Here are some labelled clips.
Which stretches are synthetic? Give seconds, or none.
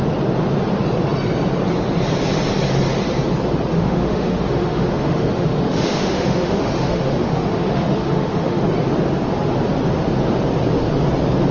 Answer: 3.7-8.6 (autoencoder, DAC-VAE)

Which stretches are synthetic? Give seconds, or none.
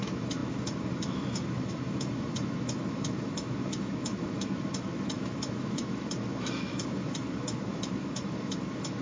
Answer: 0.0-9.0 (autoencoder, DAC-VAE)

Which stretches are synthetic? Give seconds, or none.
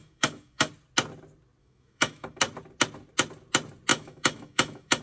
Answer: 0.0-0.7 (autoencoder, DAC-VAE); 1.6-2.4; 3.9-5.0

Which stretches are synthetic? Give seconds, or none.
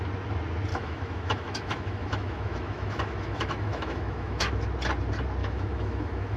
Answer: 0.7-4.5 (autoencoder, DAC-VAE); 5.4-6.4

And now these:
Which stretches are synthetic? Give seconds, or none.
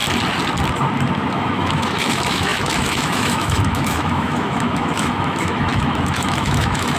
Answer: 1.3-7.0 (autoencoder, DAC-VAE)